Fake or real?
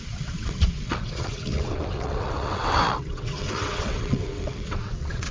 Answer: fake